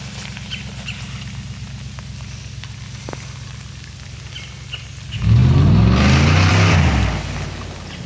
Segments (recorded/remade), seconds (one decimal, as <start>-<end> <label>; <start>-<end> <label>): 0.0-8.1 recorded